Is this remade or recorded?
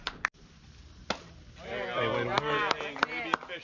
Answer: recorded